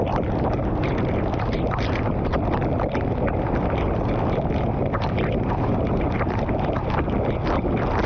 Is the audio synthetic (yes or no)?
no